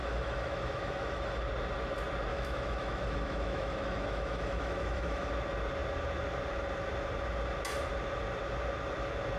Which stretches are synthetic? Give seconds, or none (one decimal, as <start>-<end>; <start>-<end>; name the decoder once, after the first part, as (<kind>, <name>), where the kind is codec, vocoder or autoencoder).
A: 0.0-1.4 (autoencoder, DAC-VAE); 2.3-5.3